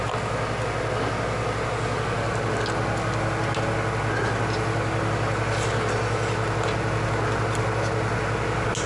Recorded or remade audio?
recorded